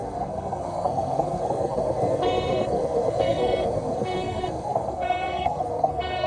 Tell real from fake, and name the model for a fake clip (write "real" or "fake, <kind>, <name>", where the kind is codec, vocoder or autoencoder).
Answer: fake, codec, SNAC